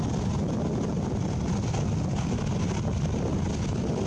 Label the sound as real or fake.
real